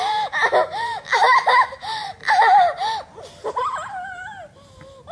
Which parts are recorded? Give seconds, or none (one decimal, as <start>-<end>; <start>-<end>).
2.0-5.1